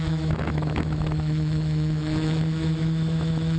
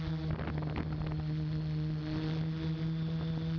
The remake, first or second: first